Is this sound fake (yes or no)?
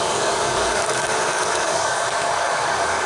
yes